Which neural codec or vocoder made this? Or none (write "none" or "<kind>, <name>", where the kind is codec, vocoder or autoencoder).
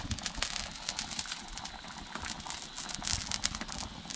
none